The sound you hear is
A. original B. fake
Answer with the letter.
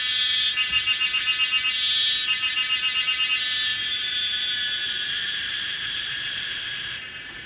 B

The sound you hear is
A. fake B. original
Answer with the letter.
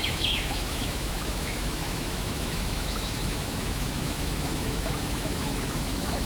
A